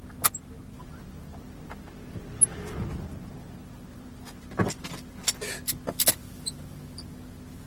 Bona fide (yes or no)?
yes